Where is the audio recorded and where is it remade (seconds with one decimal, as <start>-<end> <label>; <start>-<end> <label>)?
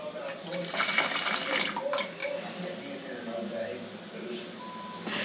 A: 0.0-5.2 recorded